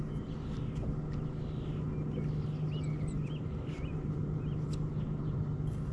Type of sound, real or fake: real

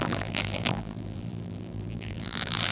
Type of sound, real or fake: fake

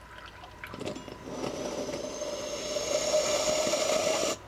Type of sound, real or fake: real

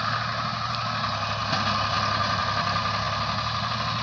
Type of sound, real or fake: real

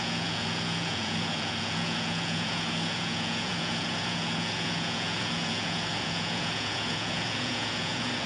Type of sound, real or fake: fake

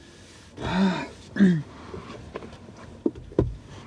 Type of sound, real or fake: real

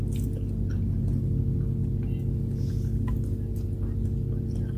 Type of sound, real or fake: real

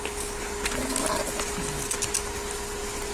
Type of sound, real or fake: real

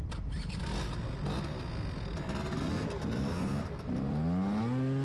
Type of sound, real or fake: real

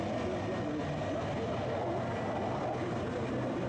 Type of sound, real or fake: real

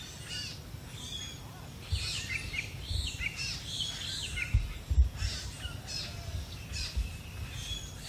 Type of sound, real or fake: real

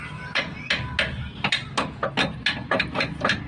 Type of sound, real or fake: real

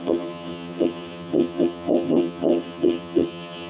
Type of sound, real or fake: fake